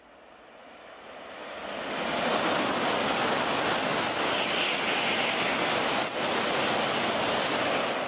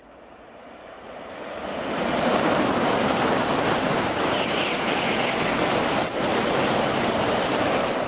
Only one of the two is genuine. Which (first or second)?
first